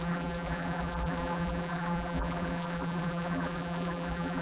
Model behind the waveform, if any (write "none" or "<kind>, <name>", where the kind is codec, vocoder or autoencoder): vocoder, BigVGAN v2